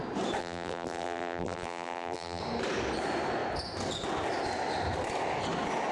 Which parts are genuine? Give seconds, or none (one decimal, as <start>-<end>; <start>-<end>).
0.0-0.4; 2.4-5.9